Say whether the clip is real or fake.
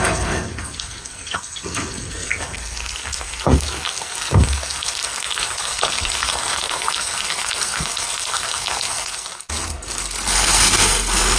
fake